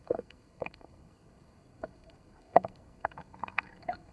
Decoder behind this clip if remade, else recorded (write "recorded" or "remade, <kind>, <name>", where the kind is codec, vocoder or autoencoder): remade, codec, SNAC